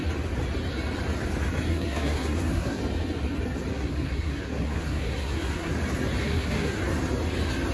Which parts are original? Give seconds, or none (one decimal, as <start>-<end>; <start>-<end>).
0.0-1.7; 2.8-3.7; 5.7-6.2; 6.8-7.7